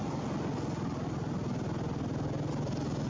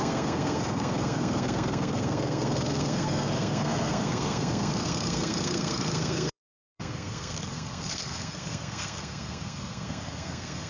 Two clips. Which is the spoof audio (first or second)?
second